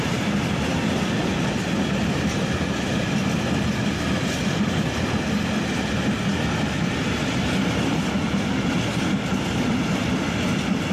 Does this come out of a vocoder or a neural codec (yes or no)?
no